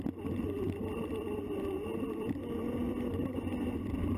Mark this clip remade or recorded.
recorded